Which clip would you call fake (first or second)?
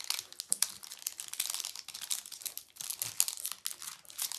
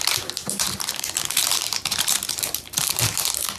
second